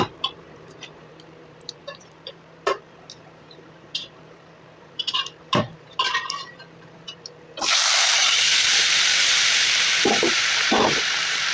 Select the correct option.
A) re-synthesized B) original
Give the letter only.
A